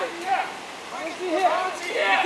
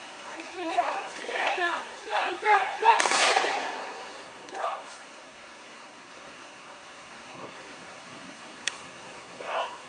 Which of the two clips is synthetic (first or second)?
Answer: second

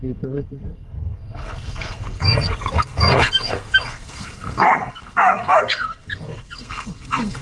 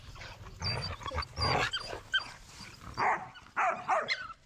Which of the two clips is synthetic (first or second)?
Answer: first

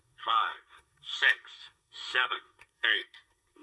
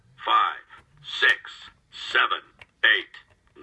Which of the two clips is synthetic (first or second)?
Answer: first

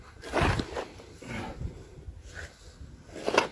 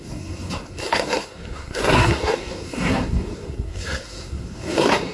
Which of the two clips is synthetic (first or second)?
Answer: second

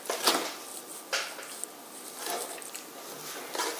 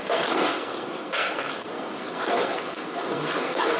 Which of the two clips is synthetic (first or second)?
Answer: second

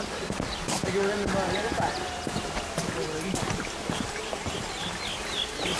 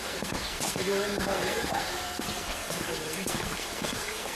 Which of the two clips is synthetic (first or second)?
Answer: second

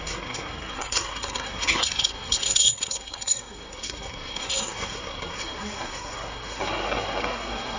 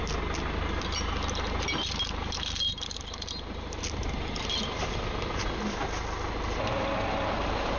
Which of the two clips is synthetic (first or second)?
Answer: first